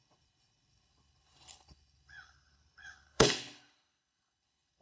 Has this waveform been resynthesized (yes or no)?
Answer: yes